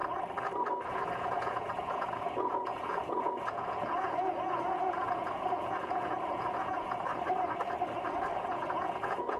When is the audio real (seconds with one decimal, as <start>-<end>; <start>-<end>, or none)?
0.0-0.9; 7.1-8.4